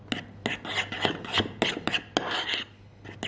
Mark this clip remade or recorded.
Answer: recorded